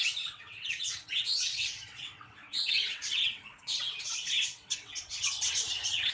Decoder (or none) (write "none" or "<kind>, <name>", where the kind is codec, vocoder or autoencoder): vocoder, WaveNeXt